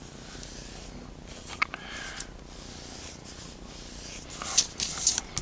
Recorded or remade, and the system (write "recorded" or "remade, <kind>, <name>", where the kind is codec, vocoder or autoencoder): recorded